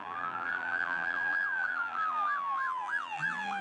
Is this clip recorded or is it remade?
remade